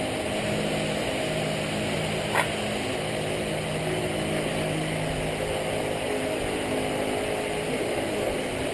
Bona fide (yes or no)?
yes